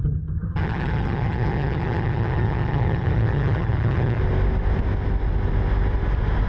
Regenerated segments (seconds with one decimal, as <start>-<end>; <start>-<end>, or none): 0.0-4.2